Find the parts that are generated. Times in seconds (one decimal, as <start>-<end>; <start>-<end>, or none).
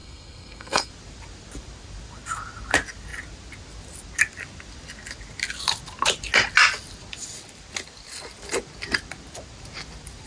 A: 0.0-0.9